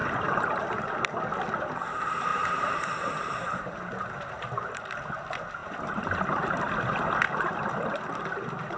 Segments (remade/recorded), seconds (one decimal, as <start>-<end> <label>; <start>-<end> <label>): 0.0-0.6 remade; 0.6-2.3 recorded; 2.3-5.1 remade; 5.1-5.6 recorded; 5.6-6.6 remade; 6.6-8.8 recorded